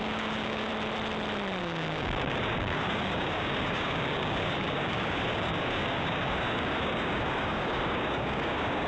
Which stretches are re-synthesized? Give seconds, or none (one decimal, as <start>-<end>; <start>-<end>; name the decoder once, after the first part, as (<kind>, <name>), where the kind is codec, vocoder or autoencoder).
0.0-0.7 (codec, DAC); 1.6-8.9